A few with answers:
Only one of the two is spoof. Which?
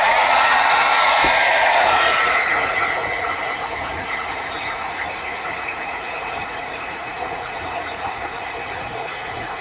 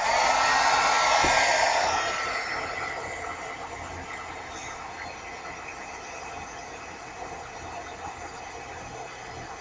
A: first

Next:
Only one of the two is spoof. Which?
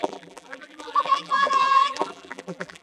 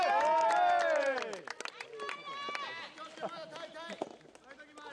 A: first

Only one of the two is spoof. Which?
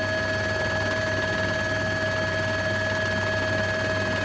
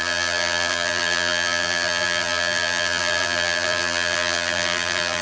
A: second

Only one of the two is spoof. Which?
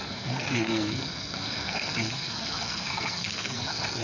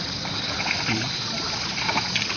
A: first